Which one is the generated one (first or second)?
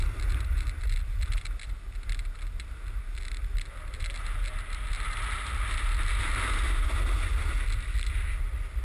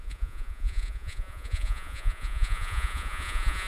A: second